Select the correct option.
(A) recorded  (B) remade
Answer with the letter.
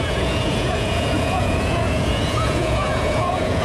B